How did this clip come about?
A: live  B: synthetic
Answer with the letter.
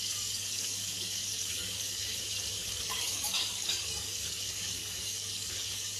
B